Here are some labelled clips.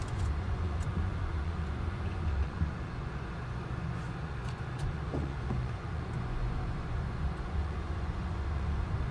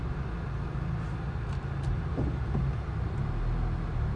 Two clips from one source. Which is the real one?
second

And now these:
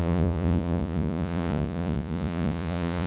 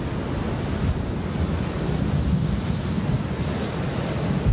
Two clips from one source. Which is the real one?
second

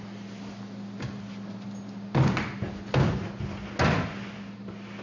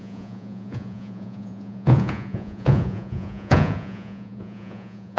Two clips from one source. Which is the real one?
first